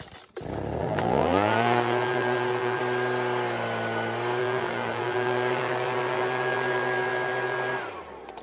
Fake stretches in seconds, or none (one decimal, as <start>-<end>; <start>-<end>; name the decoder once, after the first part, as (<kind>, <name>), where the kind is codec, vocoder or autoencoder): 0.8-2.8 (vocoder, BigVGAN v2); 4.4-7.7